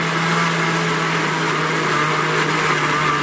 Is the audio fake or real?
real